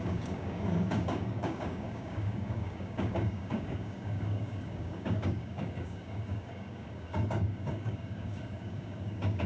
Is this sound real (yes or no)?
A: no